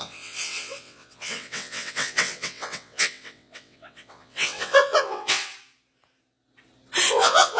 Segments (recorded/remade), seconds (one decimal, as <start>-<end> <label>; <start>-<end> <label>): 0.0-5.5 remade; 5.5-7.1 recorded; 7.1-7.6 remade